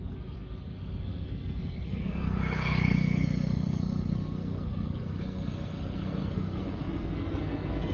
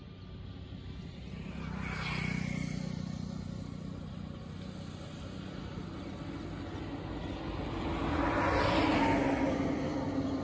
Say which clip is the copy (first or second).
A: first